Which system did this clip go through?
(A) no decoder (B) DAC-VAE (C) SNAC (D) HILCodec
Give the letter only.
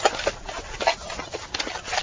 A